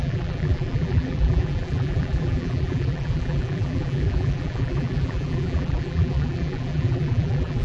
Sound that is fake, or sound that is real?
fake